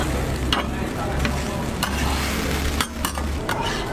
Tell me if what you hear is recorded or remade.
recorded